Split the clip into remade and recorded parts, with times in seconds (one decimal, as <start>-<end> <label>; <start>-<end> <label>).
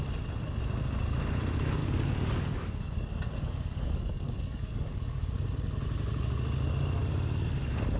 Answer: 0.0-1.8 recorded; 1.8-5.3 remade; 5.3-8.0 recorded